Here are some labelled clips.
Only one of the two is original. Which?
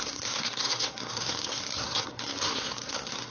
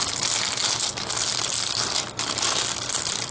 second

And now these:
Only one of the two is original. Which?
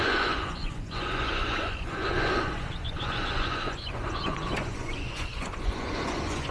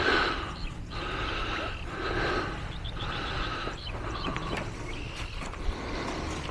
second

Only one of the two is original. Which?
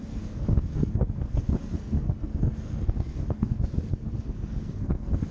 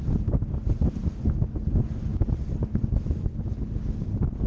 second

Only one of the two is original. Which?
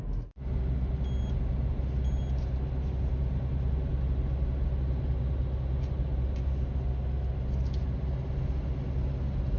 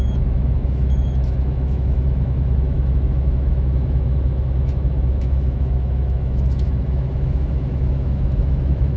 first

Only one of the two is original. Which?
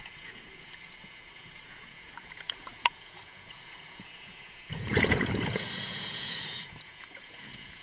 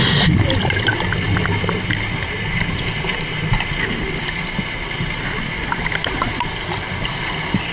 second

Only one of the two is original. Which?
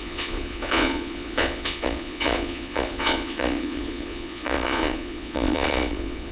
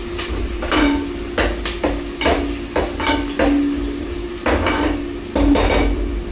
second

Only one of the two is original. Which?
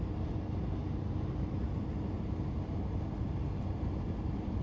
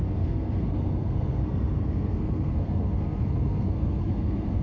first